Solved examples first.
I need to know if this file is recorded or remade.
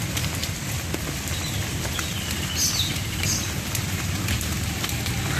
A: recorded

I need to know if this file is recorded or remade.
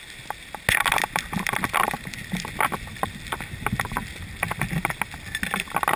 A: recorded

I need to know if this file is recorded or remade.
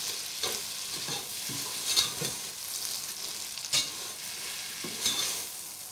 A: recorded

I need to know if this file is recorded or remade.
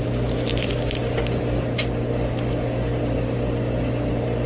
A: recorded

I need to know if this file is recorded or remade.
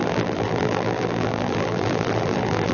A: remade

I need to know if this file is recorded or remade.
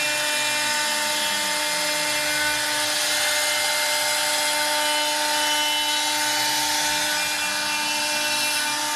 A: recorded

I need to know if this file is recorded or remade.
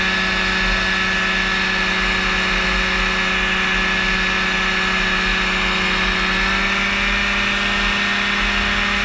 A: recorded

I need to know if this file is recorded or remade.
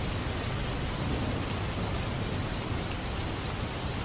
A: recorded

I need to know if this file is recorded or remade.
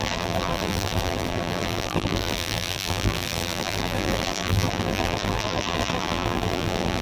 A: remade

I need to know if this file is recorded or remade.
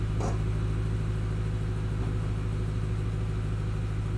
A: recorded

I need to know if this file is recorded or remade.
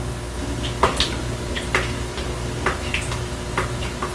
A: recorded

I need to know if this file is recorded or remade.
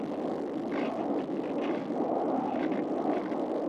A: recorded